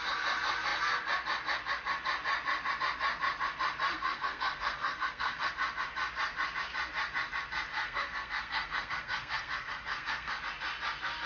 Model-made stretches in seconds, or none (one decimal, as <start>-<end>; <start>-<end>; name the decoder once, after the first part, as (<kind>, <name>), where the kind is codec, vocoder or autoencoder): 3.9-5.5 (codec, SNAC); 7.7-10.4